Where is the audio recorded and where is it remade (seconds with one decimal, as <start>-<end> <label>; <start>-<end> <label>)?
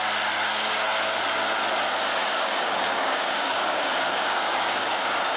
0.0-2.2 recorded; 2.2-5.4 remade